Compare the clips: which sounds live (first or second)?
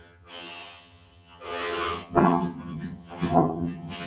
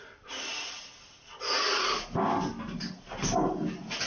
second